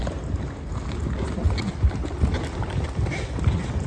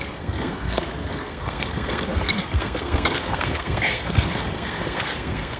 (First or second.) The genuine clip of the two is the first